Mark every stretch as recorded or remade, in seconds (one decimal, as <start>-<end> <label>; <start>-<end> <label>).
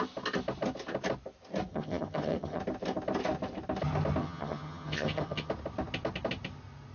0.0-1.7 recorded; 1.7-2.6 remade; 2.6-4.2 recorded; 4.2-5.5 remade; 5.5-6.9 recorded